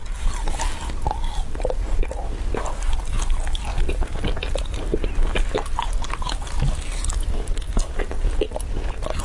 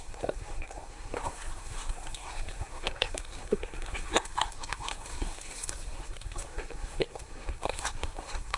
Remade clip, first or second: second